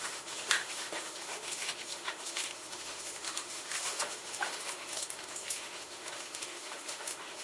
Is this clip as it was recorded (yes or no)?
no